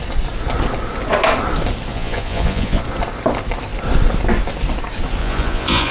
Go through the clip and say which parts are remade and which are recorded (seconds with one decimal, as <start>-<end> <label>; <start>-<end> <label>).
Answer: 0.0-1.9 recorded; 1.9-2.8 remade; 2.8-5.2 recorded; 5.2-5.9 remade